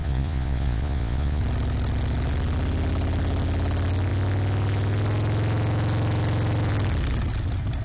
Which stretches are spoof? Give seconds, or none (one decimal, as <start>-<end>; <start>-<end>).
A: 0.0-1.4